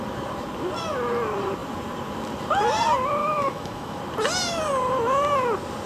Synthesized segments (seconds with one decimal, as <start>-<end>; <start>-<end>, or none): 3.2-4.0